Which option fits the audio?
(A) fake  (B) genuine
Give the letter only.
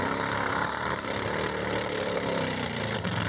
A